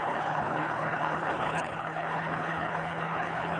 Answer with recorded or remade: remade